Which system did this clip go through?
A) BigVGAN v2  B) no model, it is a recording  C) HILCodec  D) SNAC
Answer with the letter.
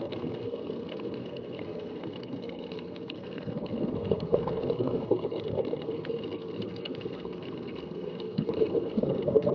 D